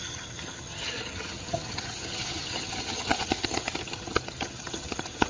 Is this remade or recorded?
remade